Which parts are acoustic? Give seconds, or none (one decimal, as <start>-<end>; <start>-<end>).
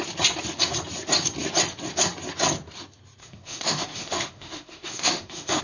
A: 0.0-3.2